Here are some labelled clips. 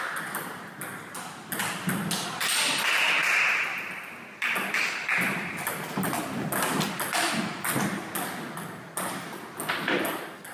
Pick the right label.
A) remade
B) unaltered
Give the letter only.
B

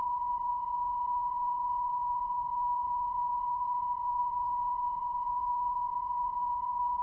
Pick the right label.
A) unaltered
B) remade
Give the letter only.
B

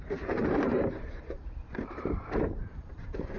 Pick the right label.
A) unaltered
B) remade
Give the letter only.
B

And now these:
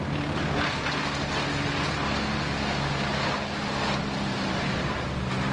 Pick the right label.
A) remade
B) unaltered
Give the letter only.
B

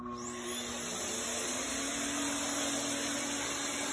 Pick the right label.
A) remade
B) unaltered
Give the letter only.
B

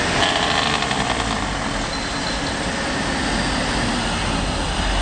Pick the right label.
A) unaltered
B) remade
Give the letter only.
A